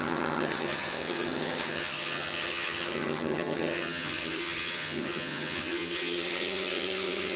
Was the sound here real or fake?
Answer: fake